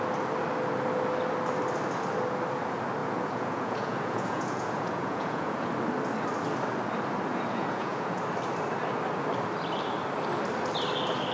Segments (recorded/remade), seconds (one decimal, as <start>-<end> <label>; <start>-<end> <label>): 0.0-3.0 recorded; 3.0-5.7 remade; 5.7-7.3 recorded; 7.3-8.2 remade; 8.2-11.3 recorded